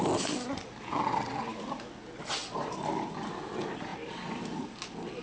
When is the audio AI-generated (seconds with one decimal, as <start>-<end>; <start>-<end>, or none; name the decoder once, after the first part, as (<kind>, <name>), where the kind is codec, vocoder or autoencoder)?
none